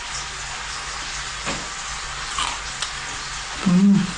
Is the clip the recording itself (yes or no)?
yes